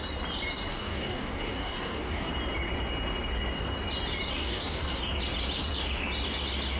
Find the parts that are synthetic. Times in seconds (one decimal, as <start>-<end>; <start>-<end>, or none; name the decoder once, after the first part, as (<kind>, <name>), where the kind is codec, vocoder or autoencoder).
0.7-2.3 (codec, DAC); 4.3-5.0